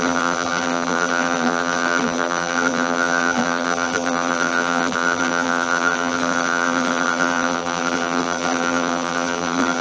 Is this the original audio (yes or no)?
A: no